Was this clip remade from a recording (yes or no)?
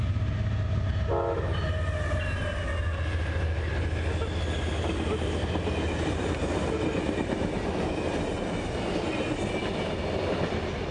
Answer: no